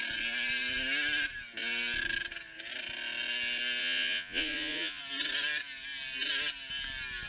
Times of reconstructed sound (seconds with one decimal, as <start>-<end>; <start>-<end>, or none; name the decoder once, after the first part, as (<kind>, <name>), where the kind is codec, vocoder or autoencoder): 3.8-5.0 (vocoder, Vocos)